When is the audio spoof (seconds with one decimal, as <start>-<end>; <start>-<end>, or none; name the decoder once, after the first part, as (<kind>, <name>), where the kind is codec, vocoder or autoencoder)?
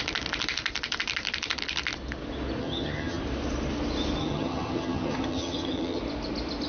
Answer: 2.6-3.2 (vocoder, HiFi-GAN); 4.2-6.0